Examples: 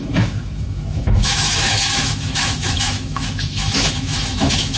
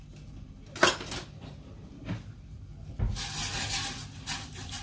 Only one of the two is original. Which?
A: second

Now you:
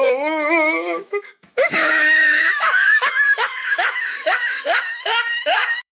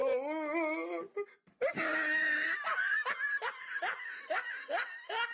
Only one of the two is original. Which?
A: second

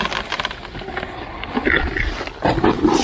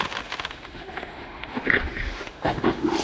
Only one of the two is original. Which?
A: first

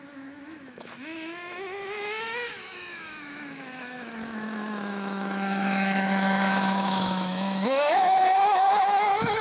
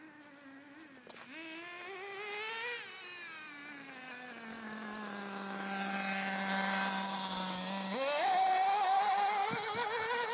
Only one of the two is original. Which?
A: second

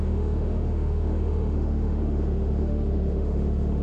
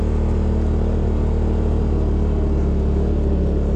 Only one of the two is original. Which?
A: second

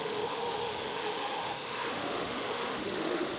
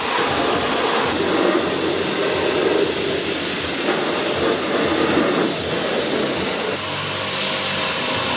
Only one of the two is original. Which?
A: second